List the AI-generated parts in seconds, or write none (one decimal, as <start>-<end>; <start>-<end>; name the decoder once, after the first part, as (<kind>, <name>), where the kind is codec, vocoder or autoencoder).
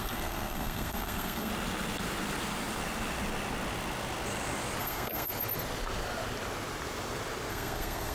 0.0-1.5 (codec, SNAC); 4.8-5.3; 7.5-8.1